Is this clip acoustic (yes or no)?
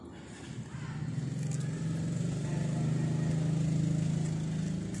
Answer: yes